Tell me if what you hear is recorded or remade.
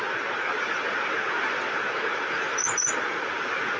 recorded